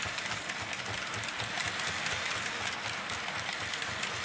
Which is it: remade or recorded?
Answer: recorded